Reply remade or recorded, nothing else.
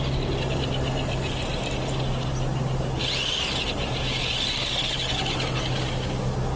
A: recorded